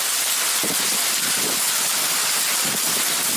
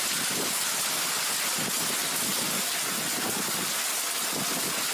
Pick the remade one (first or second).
first